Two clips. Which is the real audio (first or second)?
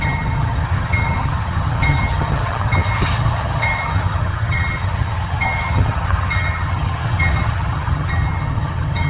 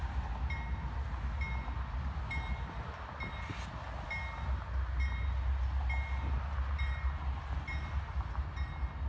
second